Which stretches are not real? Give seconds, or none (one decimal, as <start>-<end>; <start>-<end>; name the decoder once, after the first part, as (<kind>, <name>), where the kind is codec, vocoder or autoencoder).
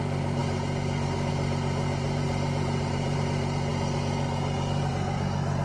1.9-3.2 (vocoder, BigVGAN v2)